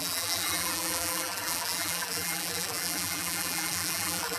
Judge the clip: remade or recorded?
remade